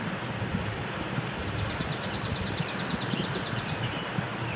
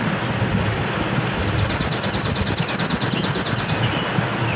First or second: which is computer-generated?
first